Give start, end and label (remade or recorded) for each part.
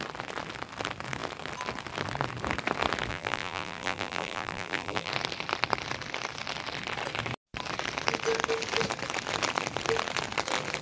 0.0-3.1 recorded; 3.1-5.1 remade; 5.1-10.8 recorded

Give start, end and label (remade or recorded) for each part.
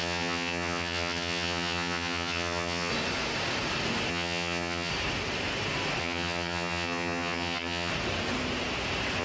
0.0-2.9 remade; 2.9-4.1 recorded; 4.1-4.9 remade; 4.9-6.0 recorded; 6.0-7.9 remade; 7.9-9.2 recorded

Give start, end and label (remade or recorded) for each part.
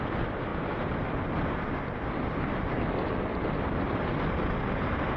0.0-5.2 recorded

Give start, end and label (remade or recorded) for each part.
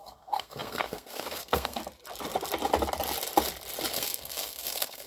0.0-1.8 remade; 1.8-3.9 recorded; 3.9-5.1 remade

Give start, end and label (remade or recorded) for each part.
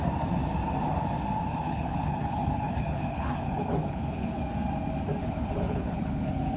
0.0-1.5 recorded; 1.5-4.4 remade; 4.4-5.2 recorded; 5.2-6.6 remade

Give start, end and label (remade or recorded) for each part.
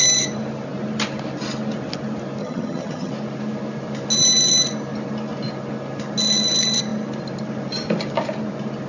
0.0-2.4 recorded; 2.4-3.1 remade; 3.1-8.9 recorded